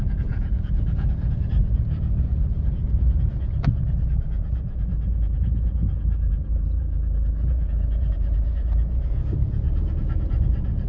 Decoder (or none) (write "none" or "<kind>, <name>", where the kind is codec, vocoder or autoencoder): vocoder, Vocos